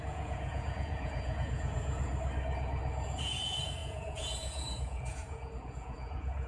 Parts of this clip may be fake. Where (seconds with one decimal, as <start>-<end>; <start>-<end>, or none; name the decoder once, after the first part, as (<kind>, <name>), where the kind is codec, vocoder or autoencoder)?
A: 0.0-2.1 (vocoder, Vocos); 3.2-6.5

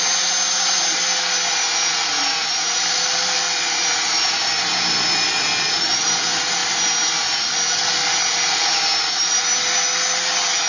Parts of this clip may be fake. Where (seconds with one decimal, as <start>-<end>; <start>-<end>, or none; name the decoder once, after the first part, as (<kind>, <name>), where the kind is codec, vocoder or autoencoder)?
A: none